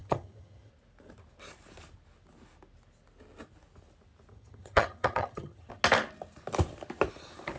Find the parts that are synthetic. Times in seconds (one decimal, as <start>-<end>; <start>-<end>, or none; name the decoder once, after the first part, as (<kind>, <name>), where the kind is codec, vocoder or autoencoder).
0.0-0.7 (vocoder, HiFi-GAN); 4.3-5.7